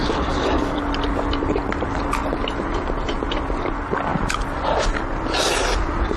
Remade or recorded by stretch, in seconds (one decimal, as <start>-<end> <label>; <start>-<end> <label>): 0.0-0.8 remade; 0.8-6.2 recorded